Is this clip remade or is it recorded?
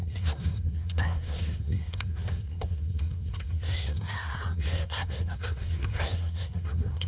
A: remade